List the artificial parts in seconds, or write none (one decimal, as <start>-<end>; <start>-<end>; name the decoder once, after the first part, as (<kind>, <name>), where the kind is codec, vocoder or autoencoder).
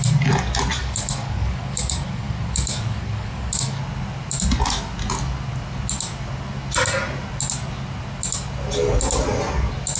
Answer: 0.8-3.8 (codec, DAC)